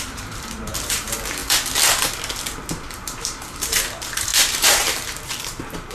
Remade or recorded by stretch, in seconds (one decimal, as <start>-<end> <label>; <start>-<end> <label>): 0.0-1.4 remade; 1.4-2.9 recorded; 2.9-5.9 remade